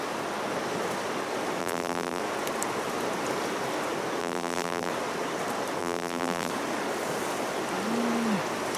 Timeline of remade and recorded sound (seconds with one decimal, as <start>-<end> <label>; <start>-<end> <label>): 0.0-1.6 recorded; 1.6-2.2 remade; 2.2-4.2 recorded; 4.2-4.9 remade; 4.9-5.8 recorded; 5.8-6.5 remade; 6.5-8.8 recorded